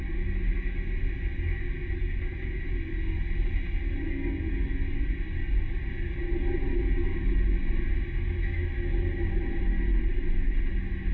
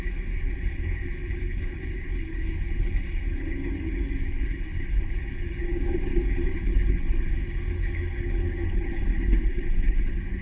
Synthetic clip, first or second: second